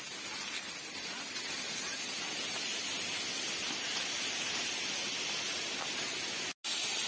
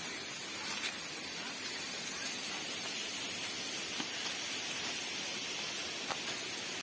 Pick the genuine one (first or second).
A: first